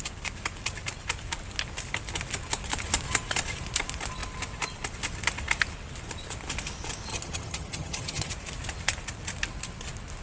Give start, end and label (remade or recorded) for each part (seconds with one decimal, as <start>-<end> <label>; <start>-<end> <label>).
0.0-7.1 recorded; 7.1-8.3 remade; 8.3-10.2 recorded